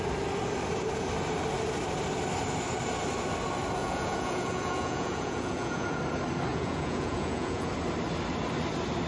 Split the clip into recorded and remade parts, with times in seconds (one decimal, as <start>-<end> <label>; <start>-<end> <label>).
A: 0.0-3.8 recorded; 3.8-6.0 remade; 6.0-6.5 recorded; 6.5-7.7 remade; 7.7-9.1 recorded